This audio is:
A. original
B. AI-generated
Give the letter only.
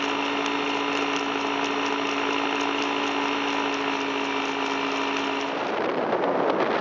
A